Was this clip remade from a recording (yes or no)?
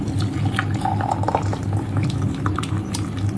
no